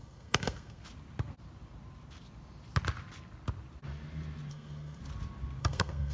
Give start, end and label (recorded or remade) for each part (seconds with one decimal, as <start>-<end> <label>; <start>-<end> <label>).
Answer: 0.0-0.8 remade; 0.8-4.5 recorded; 4.5-5.0 remade; 5.0-5.6 recorded; 5.6-6.1 remade